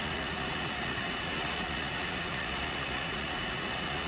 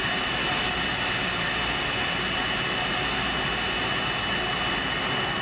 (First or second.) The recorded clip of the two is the second